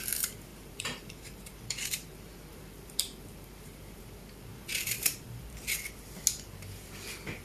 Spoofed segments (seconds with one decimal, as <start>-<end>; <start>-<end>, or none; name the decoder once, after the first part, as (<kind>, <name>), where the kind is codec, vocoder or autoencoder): 0.5-4.0 (vocoder, BigVGAN v2); 4.5-5.4